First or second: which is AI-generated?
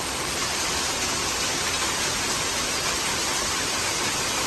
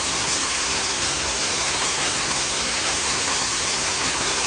second